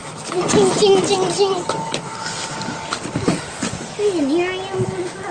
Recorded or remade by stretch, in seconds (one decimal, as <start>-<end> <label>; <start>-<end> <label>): 0.0-0.5 remade; 0.5-1.0 recorded; 1.0-4.2 remade; 4.2-5.3 recorded